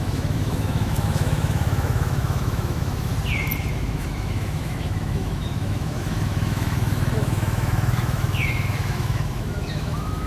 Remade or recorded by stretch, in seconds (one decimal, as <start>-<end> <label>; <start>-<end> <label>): 0.0-3.1 remade; 3.1-3.7 recorded; 3.7-10.3 remade